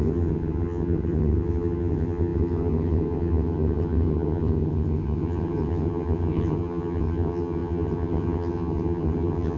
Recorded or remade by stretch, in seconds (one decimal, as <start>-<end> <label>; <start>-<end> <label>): 0.0-9.6 remade